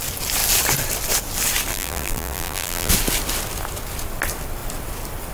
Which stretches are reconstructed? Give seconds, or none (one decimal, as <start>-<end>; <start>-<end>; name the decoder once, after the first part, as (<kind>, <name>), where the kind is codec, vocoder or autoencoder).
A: 1.7-2.9 (vocoder, BigVGAN v2)